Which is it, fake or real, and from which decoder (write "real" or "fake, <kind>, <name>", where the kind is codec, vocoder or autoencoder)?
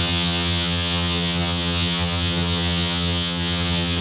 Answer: fake, vocoder, HiFi-GAN